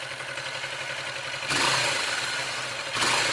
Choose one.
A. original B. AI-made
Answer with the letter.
A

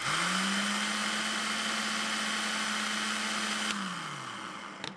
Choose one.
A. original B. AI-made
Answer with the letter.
A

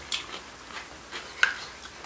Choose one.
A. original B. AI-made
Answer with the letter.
A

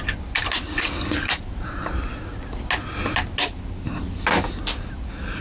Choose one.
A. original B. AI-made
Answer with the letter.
A